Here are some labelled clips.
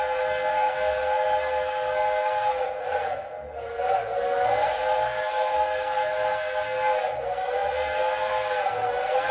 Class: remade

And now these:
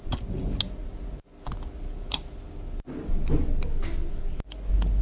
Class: recorded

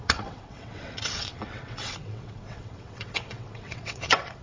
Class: remade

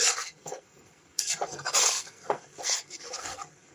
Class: remade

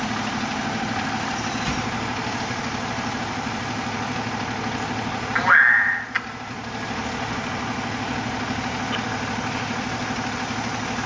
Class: recorded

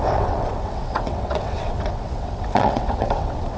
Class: remade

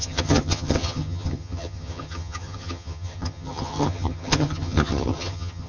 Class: remade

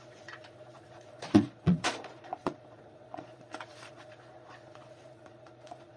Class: remade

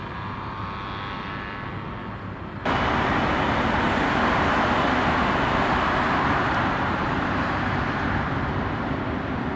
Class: recorded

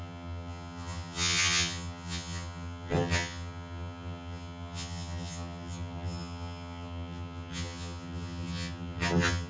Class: remade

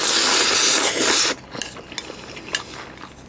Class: recorded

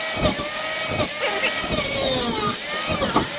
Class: recorded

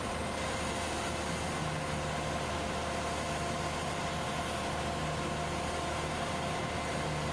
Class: recorded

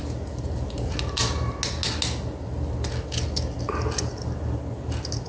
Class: recorded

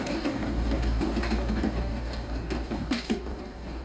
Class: remade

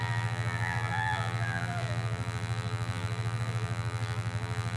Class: remade